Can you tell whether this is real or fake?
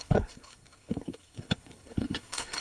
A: fake